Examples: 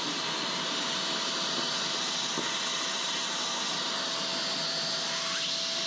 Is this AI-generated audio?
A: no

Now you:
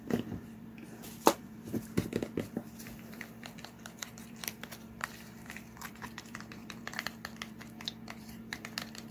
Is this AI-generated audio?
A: yes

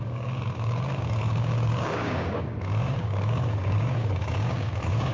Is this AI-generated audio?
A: yes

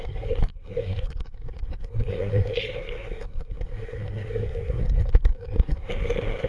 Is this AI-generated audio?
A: yes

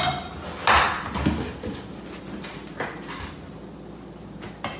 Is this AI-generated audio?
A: no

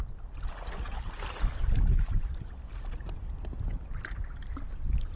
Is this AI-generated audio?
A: no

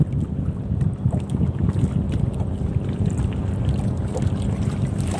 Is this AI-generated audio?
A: no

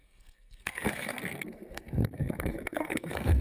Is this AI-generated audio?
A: yes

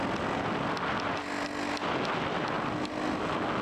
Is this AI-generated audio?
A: no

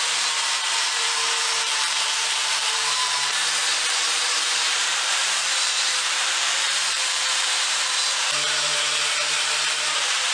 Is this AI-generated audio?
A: yes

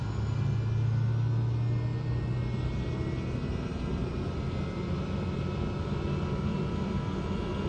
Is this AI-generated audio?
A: no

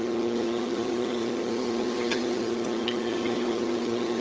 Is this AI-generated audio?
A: yes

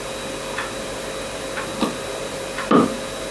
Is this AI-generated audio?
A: no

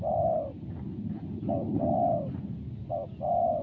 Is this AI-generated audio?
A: no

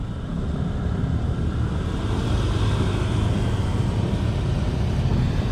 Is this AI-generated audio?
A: yes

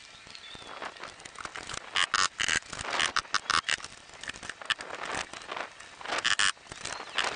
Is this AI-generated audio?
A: no